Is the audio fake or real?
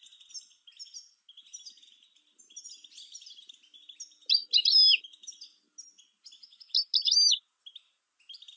real